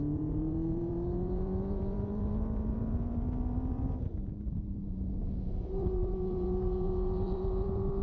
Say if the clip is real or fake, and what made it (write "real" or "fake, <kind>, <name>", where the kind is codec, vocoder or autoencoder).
fake, vocoder, BigVGAN v2